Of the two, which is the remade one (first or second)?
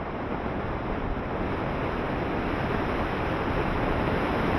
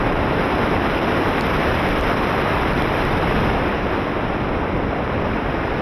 second